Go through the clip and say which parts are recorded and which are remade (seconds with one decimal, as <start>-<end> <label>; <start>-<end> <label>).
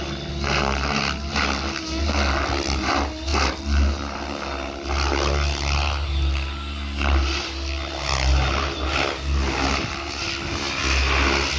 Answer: 0.0-11.6 recorded